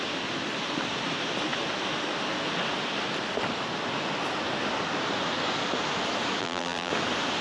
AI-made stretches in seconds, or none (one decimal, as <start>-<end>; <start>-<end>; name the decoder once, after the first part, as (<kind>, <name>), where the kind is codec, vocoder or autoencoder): 6.4-6.9 (vocoder, BigVGAN v2)